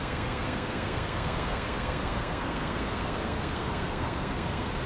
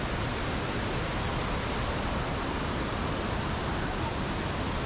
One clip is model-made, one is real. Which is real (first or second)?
second